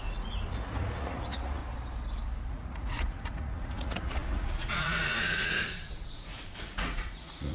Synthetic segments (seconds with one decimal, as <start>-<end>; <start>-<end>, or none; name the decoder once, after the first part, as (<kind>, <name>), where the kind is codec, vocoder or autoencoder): 0.0-1.6 (vocoder, Vocos); 2.5-7.5